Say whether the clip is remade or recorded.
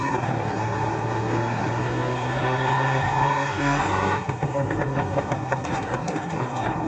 remade